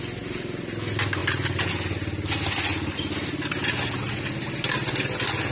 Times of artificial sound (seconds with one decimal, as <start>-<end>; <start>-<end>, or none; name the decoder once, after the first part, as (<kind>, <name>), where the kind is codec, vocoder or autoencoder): none